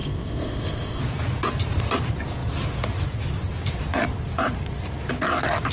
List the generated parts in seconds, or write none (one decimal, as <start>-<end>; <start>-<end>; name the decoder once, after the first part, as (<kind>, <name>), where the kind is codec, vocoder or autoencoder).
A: 0.0-1.0 (codec, ZipCodec)

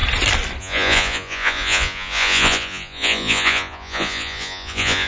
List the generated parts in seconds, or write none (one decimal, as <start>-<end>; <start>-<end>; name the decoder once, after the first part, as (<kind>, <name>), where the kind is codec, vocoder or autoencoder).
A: 0.6-5.1 (vocoder, Vocos)

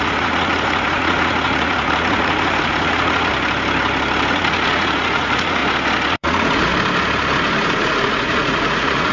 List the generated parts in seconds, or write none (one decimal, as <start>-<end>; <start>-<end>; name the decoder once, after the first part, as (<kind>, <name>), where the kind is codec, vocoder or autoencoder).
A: 0.0-3.3 (vocoder, Vocos); 4.3-5.6; 6.1-6.7; 8.1-9.1

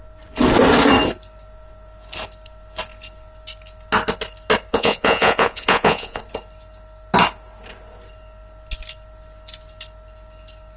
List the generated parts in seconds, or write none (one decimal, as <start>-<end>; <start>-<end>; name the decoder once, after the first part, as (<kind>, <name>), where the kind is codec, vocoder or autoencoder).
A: 4.7-6.2 (vocoder, Vocos)

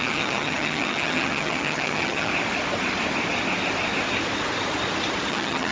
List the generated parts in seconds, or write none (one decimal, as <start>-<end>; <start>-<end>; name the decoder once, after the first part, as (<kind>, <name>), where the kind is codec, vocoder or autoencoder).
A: 0.0-2.3 (vocoder, HiFi-GAN); 5.3-5.7

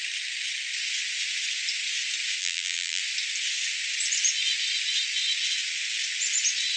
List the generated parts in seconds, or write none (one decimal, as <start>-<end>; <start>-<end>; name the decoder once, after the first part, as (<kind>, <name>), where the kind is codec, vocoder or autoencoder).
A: 2.4-3.0 (vocoder, BigVGAN v2)

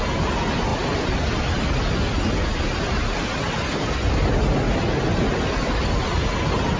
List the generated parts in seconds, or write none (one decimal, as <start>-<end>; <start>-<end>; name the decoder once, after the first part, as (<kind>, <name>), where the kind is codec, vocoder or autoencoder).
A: none

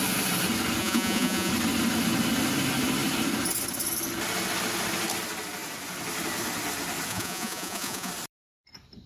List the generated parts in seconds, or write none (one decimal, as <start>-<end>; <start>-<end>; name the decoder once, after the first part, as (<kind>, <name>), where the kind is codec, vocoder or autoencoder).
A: 0.8-1.5 (vocoder, Vocos); 7.1-8.1